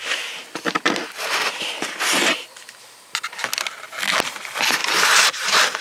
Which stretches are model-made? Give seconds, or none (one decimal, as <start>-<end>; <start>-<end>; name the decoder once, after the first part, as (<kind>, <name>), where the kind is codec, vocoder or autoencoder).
0.4-1.8 (vocoder, BigVGAN v2); 4.8-5.8